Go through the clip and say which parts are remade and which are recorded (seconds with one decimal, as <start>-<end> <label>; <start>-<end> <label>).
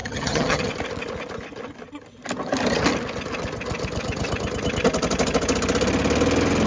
0.0-0.7 remade; 0.7-6.7 recorded